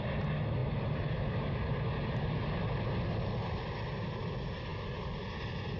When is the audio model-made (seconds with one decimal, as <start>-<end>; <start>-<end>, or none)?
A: none